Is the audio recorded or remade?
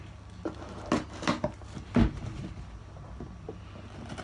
recorded